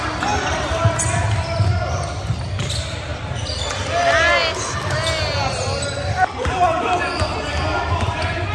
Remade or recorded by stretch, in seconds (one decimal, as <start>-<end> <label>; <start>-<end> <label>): 0.0-8.5 recorded